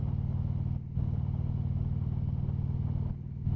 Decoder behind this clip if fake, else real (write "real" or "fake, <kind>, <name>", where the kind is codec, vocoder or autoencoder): real